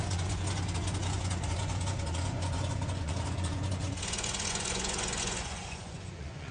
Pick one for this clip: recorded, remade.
remade